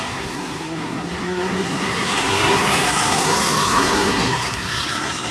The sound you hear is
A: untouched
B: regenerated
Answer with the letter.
B